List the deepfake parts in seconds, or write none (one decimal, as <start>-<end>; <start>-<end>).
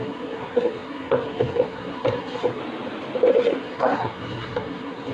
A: 0.0-2.6; 3.3-5.1